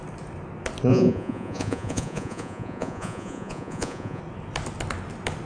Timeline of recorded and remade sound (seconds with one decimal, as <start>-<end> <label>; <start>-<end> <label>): 0.0-0.9 recorded; 0.9-4.2 remade; 4.2-5.5 recorded